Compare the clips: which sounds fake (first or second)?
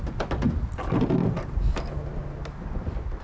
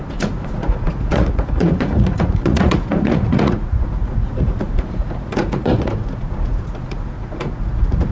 second